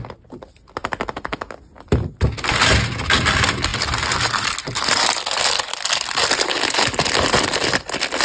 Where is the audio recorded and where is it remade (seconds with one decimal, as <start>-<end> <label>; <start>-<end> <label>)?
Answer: 0.0-8.2 recorded